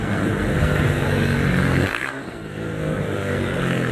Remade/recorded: remade